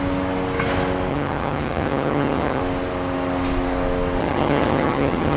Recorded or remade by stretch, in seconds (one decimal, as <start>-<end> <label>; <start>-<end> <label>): 0.0-1.1 recorded; 1.1-2.6 remade; 2.6-4.2 recorded; 4.2-5.4 remade